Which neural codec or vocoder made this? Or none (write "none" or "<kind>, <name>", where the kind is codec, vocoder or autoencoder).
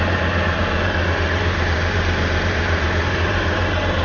vocoder, BigVGAN v2